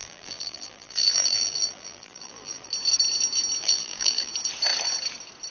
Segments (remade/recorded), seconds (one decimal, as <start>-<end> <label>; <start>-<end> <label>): 0.0-2.7 remade; 2.7-3.6 recorded; 3.6-4.3 remade; 4.3-5.5 recorded